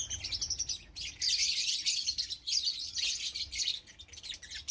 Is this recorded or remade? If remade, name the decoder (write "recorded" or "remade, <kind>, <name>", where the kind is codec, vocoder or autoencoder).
recorded